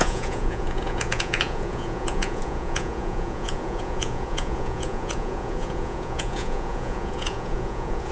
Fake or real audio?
fake